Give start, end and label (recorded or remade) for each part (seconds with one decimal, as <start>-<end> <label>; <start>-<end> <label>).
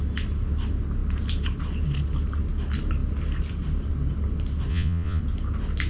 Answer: 0.0-4.7 recorded; 4.7-5.2 remade; 5.2-5.9 recorded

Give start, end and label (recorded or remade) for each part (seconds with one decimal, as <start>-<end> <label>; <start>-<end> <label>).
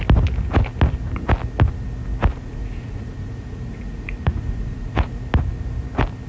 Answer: 0.0-2.3 recorded; 2.3-5.2 remade; 5.2-6.3 recorded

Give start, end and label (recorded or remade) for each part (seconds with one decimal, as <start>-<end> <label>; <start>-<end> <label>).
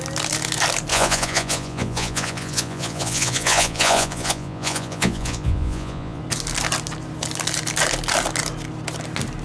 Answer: 0.0-0.9 recorded; 0.9-6.2 remade; 6.2-9.4 recorded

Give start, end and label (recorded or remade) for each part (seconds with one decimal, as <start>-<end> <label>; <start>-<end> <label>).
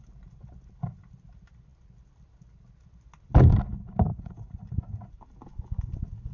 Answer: 0.0-4.1 recorded; 4.1-5.1 remade; 5.1-6.3 recorded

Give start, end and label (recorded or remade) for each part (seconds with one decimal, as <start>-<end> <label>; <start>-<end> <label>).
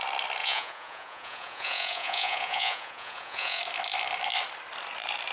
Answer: 0.0-0.4 recorded; 0.4-3.6 remade; 3.6-5.3 recorded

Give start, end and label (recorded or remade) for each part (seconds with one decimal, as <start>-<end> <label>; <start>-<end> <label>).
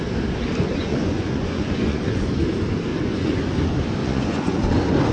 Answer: 0.0-0.8 recorded; 0.8-2.4 remade; 2.4-2.9 recorded; 2.9-3.4 remade; 3.4-4.0 recorded; 4.0-4.6 remade; 4.6-5.1 recorded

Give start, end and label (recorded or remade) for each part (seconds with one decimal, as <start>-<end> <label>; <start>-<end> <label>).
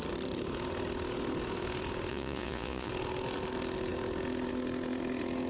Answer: 0.0-2.1 recorded; 2.1-2.9 remade; 2.9-5.5 recorded